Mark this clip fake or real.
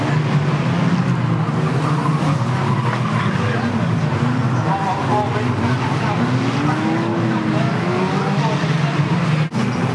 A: real